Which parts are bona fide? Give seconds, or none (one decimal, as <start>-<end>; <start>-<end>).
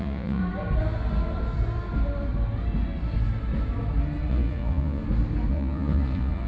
0.4-4.3; 5.0-5.5